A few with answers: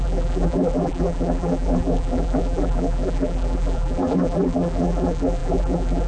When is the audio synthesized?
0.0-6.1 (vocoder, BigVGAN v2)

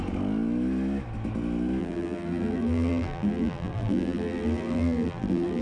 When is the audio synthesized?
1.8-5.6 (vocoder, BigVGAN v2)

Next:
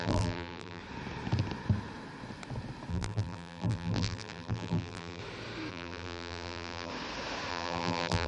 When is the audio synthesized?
0.0-0.8 (vocoder, BigVGAN v2); 2.9-5.2; 5.7-6.9; 7.5-8.3

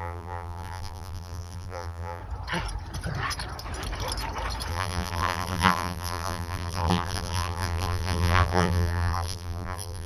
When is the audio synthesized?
0.0-2.2 (vocoder, BigVGAN v2); 4.7-10.1

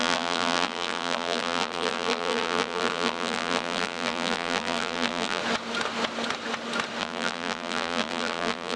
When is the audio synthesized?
0.0-5.4 (vocoder, BigVGAN v2); 7.0-8.8